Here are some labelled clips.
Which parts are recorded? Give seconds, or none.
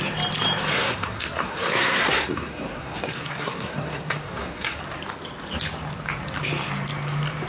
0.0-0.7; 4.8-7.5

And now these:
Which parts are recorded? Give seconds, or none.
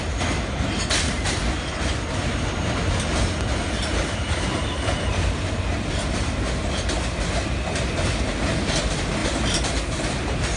0.0-9.2; 9.8-10.6